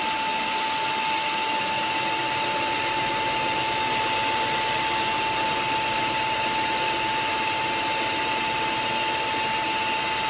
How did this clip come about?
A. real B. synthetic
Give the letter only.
A